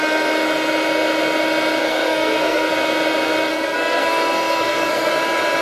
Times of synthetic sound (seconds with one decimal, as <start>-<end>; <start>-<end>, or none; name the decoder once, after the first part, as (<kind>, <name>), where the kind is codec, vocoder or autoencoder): 1.8-2.7 (codec, SNAC); 3.5-5.1